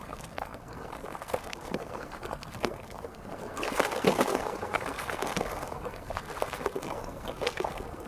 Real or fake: fake